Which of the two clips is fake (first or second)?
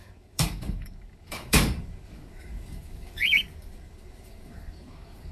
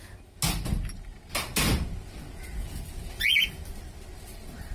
first